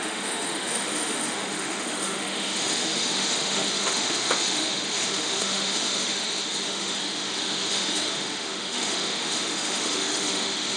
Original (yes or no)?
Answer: no